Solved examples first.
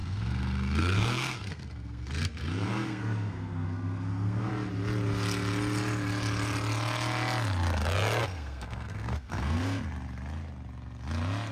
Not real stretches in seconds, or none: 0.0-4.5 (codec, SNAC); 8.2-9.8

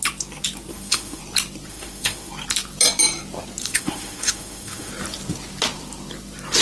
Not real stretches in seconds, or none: 0.7-1.2 (autoencoder, DAC-VAE); 1.7-2.3; 3.6-4.9

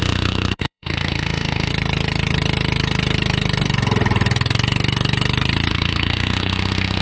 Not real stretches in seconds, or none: 0.0-1.7 (autoencoder, DAC-VAE); 5.7-7.0